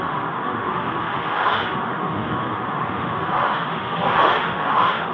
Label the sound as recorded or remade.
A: remade